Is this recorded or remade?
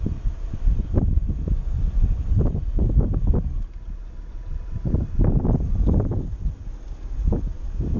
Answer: recorded